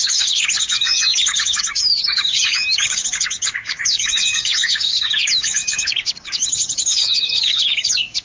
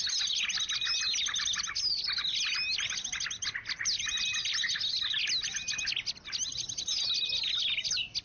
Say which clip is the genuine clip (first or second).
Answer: second